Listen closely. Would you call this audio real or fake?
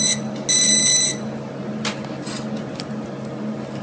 real